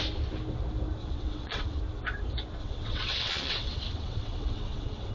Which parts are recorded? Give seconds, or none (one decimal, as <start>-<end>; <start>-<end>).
0.0-1.0; 1.8-2.6